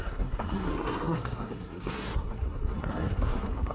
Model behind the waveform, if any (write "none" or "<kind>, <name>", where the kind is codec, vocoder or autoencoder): codec, SNAC